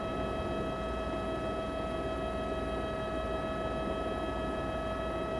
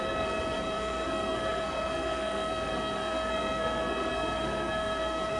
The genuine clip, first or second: first